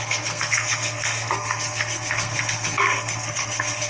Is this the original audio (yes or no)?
no